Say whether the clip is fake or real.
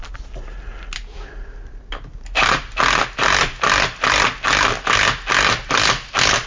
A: real